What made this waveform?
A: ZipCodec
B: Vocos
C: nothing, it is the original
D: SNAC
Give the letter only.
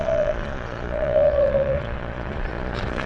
B